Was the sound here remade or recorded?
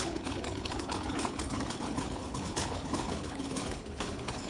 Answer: remade